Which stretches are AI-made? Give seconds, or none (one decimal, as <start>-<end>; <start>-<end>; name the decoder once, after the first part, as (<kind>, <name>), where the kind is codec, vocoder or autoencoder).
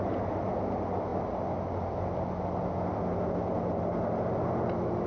none